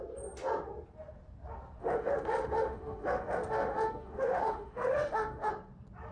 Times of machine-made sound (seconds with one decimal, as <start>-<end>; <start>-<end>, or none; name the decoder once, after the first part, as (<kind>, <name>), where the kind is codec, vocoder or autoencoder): 1.8-5.5 (autoencoder, DAC-VAE)